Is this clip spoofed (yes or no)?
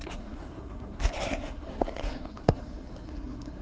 yes